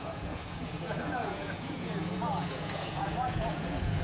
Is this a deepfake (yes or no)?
yes